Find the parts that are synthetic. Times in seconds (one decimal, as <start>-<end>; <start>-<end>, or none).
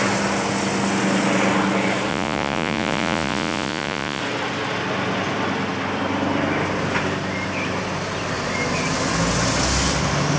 2.1-4.2